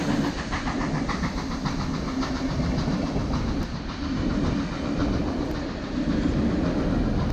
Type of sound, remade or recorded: recorded